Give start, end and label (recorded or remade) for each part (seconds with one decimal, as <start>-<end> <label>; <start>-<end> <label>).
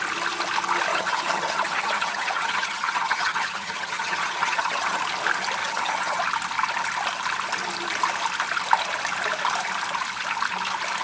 0.0-0.9 recorded; 0.9-5.0 remade; 5.0-5.6 recorded; 5.6-6.2 remade; 6.2-11.0 recorded